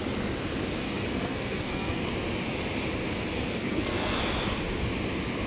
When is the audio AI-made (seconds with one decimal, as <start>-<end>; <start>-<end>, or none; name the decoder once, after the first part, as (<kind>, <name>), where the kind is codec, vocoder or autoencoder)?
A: 0.8-2.0 (codec, SNAC); 3.3-4.2